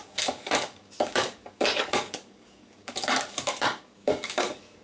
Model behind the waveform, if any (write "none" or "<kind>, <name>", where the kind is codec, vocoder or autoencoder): codec, DAC